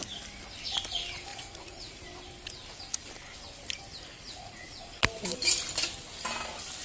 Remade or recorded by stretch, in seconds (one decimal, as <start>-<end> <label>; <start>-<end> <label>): 0.0-1.3 recorded; 1.3-2.0 remade; 2.0-4.1 recorded; 4.1-4.9 remade; 4.9-6.8 recorded